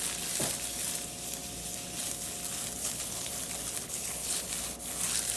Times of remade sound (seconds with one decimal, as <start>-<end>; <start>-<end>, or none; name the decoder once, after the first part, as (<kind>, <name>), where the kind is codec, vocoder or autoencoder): 2.8-3.3 (codec, HILCodec); 3.8-4.5

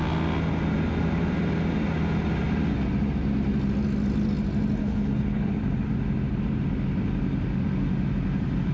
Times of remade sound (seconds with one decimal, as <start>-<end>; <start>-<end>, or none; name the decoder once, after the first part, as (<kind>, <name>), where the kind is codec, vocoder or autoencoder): 4.8-5.5 (codec, HILCodec)

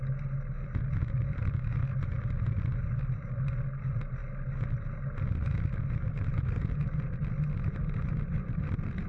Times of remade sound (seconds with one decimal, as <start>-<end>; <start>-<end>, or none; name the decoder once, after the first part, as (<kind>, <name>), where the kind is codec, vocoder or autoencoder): none

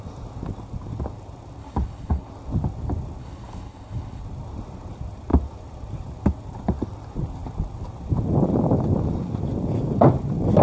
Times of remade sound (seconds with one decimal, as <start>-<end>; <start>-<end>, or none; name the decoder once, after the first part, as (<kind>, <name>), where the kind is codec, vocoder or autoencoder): 1.6-2.3 (codec, HILCodec); 3.2-4.2

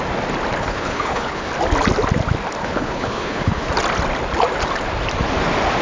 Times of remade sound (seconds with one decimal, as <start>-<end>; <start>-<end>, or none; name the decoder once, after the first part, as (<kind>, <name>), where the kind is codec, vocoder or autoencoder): 0.6-1.5 (codec, HILCodec); 2.6-3.7

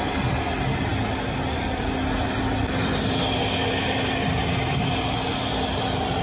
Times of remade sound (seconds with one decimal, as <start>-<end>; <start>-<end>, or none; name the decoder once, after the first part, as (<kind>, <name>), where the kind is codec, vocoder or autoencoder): none

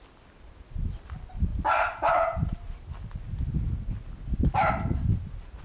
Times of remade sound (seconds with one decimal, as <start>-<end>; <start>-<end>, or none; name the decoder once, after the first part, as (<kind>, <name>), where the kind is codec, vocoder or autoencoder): none

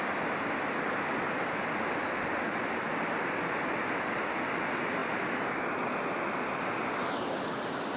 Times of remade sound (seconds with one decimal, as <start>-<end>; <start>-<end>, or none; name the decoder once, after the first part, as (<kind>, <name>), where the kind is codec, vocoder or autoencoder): none